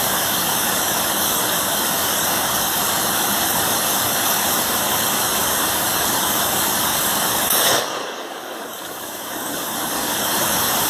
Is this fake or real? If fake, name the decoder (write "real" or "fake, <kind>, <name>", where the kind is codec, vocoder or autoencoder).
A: fake, codec, DAC